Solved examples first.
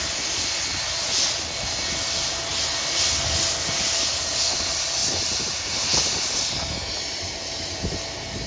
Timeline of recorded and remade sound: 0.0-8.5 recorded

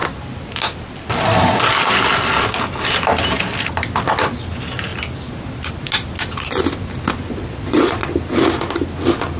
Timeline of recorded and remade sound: 0.0-7.3 recorded; 7.3-8.1 remade; 8.1-9.4 recorded

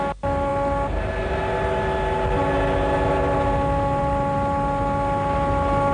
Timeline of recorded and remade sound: 0.0-5.9 recorded

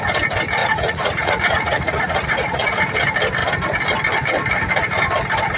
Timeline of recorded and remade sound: 0.0-0.6 recorded; 0.6-2.7 remade; 2.7-5.6 recorded